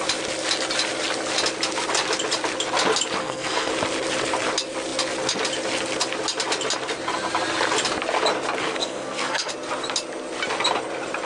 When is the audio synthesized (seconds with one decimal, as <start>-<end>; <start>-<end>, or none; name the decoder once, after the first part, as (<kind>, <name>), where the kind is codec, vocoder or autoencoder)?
3.2-3.7 (codec, SNAC); 8.7-9.5